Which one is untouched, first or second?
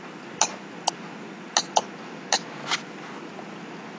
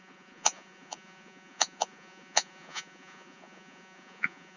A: first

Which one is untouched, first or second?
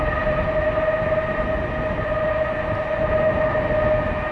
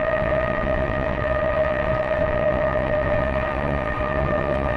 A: first